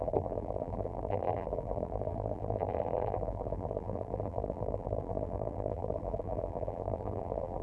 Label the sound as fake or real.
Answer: fake